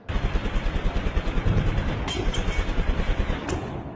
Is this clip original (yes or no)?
yes